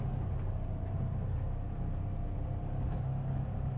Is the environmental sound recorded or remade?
recorded